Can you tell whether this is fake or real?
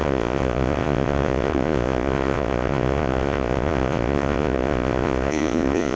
fake